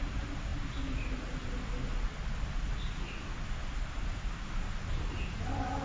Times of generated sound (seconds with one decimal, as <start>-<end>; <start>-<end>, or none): none

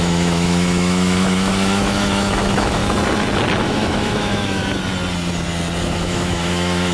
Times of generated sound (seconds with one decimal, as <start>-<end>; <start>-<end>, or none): 0.0-2.8; 3.6-4.6; 5.9-6.9

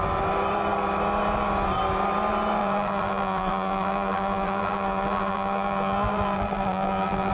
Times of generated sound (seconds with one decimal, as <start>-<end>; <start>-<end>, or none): 2.6-7.3